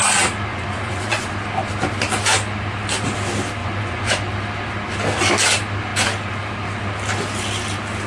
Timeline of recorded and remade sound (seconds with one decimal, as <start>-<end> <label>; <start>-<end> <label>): 0.0-0.5 recorded; 0.5-1.3 remade; 1.3-3.6 recorded; 3.6-4.2 remade; 4.2-8.1 recorded